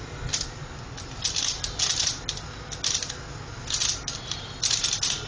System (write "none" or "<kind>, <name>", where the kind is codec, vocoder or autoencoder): none